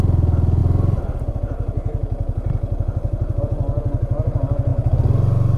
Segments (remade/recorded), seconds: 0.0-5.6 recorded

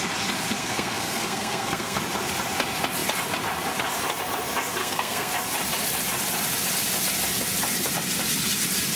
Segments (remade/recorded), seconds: 0.0-0.6 recorded; 0.6-2.0 remade; 2.0-4.8 recorded; 4.8-5.3 remade; 5.3-9.0 recorded

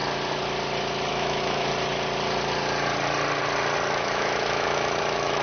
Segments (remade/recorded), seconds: 0.0-1.1 recorded; 1.1-1.7 remade; 1.7-3.9 recorded; 3.9-5.4 remade

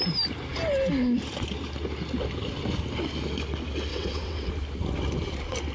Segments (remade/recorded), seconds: 0.0-3.9 recorded; 3.9-4.5 remade; 4.5-5.7 recorded